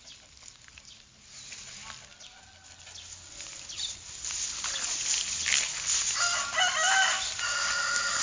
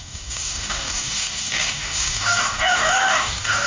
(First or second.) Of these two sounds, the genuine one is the first